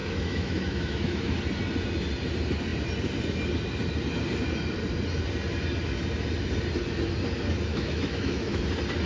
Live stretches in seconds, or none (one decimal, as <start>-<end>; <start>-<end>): 1.4-7.7; 8.6-9.1